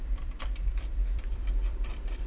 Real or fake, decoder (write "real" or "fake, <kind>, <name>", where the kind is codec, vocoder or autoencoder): fake, vocoder, BigVGAN v2